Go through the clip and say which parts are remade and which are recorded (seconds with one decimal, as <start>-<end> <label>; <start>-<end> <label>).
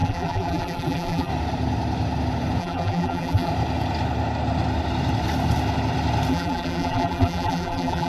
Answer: 0.0-1.3 remade; 1.3-2.6 recorded; 2.6-3.5 remade; 3.5-6.3 recorded; 6.3-8.1 remade